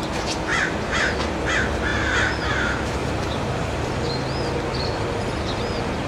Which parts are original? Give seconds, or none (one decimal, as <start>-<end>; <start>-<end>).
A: 0.0-0.5; 1.4-3.0; 4.0-6.1